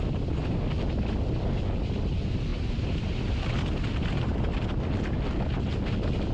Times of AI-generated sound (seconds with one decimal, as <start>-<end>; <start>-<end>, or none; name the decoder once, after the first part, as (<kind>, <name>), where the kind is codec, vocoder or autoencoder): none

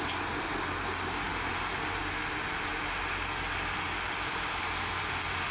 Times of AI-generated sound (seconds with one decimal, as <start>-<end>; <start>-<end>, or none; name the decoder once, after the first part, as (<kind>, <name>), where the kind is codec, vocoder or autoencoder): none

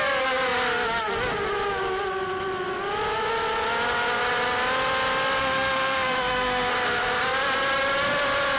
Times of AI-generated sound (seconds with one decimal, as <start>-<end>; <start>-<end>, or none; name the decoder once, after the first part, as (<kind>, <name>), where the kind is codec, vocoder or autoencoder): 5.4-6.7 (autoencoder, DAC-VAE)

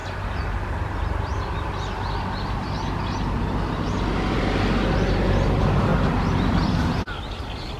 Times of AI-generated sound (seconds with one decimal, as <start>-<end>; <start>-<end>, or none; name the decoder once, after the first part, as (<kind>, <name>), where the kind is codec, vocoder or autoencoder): none